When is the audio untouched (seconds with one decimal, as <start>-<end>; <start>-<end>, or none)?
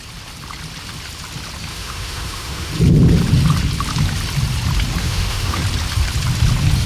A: 0.0-1.7; 2.7-5.0; 5.6-6.9